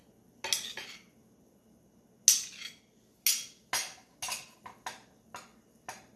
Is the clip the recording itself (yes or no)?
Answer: yes